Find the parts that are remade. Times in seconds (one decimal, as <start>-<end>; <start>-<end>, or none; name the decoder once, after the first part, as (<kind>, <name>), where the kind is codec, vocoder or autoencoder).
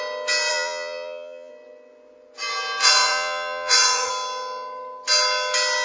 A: 0.5-1.5 (vocoder, Vocos); 2.8-4.1